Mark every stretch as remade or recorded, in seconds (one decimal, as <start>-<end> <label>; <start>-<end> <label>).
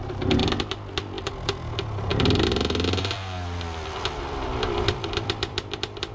0.0-2.1 recorded; 2.1-6.1 remade